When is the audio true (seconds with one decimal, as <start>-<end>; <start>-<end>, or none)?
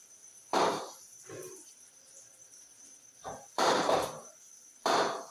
none